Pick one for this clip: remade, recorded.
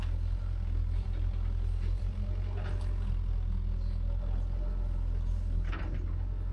recorded